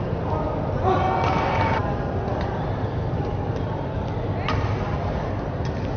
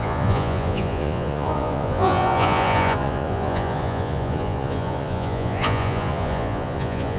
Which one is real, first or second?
first